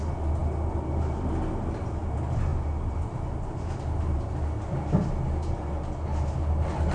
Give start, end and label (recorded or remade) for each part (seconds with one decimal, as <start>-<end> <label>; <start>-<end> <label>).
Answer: 0.0-2.5 recorded; 2.5-3.6 remade; 3.6-6.9 recorded